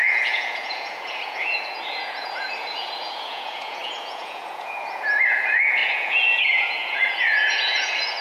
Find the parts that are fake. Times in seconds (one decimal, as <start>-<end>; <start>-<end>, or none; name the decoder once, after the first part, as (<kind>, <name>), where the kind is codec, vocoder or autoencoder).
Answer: 0.0-8.2 (vocoder, Vocos)